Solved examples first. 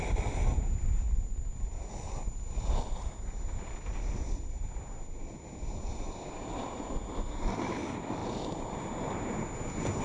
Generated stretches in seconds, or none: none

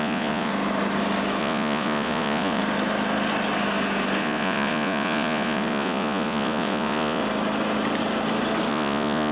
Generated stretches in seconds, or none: 0.0-0.5 (vocoder, Vocos); 1.4-2.6; 4.2-7.2; 8.7-9.3

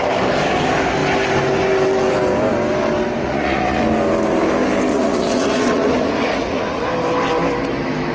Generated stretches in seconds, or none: 3.2-3.8 (vocoder, Vocos); 4.9-6.9

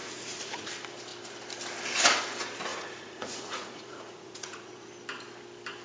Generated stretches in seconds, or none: 0.0-0.7 (vocoder, Vocos); 2.7-4.9

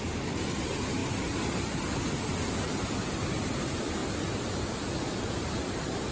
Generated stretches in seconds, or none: none

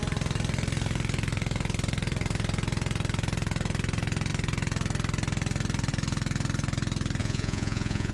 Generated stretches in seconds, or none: 7.2-8.1 (vocoder, Vocos)

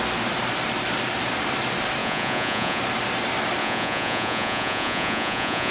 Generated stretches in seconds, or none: 2.0-2.8 (vocoder, Vocos); 3.6-5.7